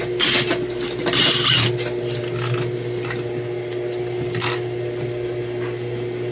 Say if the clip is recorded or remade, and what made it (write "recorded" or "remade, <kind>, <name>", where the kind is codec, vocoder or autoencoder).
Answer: recorded